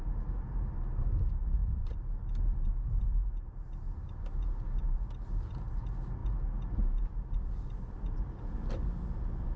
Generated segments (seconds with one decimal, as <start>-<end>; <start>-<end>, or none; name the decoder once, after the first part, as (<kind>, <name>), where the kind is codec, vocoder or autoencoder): none